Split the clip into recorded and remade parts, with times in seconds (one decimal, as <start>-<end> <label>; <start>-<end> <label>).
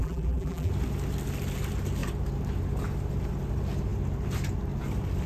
0.0-0.7 remade; 0.7-5.3 recorded